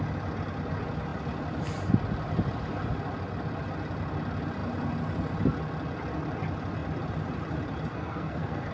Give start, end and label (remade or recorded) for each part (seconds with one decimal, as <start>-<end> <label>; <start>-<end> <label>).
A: 0.0-7.9 recorded; 7.9-8.7 remade